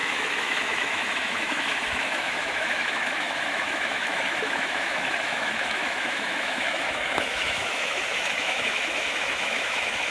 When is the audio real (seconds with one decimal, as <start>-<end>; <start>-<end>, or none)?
none